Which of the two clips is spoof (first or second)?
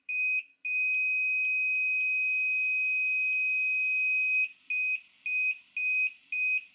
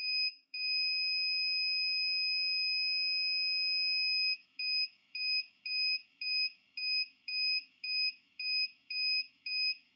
second